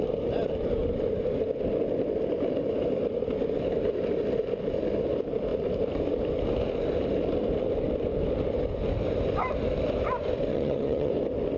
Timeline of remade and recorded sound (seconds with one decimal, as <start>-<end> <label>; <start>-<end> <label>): 0.0-10.5 recorded; 10.5-11.1 remade; 11.1-11.6 recorded